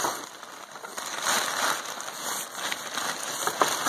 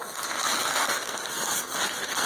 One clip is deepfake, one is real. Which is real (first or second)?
first